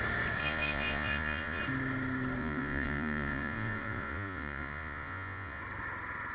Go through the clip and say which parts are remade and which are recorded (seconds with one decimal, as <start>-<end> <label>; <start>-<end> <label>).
0.0-0.4 recorded; 0.4-1.6 remade; 1.6-2.4 recorded; 2.4-5.6 remade; 5.6-6.3 recorded